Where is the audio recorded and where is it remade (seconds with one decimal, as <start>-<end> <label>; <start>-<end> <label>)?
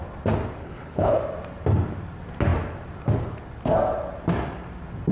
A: 0.0-0.6 recorded; 0.6-1.2 remade; 1.2-5.1 recorded